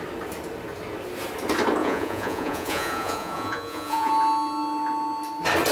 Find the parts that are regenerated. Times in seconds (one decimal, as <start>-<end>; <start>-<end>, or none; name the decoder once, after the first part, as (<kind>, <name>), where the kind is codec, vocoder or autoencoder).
1.8-4.1 (vocoder, Vocos)